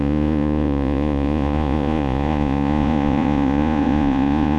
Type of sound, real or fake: fake